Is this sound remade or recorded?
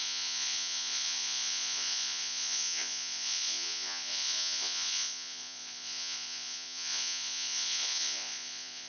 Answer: remade